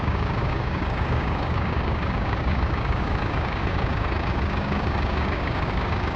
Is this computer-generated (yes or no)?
yes